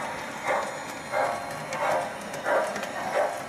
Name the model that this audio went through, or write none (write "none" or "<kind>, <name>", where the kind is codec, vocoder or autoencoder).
none